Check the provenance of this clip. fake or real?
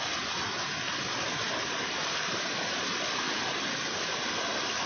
real